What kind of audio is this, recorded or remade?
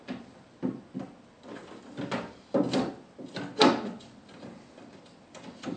recorded